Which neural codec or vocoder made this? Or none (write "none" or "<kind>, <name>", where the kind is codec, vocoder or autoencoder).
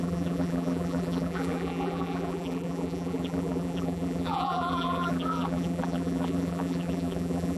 vocoder, BigVGAN v2